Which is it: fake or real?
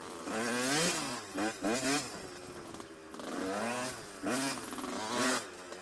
real